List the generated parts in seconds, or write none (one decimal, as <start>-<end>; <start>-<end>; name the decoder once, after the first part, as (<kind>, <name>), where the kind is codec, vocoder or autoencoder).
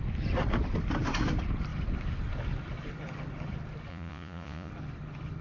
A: 3.9-4.7 (vocoder, Vocos)